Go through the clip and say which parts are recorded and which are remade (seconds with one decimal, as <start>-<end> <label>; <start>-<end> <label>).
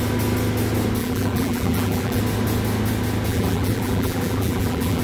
0.0-1.0 recorded; 1.0-2.2 remade; 2.2-3.3 recorded; 3.3-5.0 remade